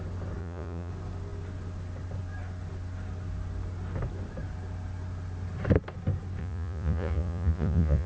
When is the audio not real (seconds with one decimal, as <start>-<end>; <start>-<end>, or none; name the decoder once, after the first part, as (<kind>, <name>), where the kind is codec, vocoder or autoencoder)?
0.4-0.9 (vocoder, Vocos); 6.4-8.1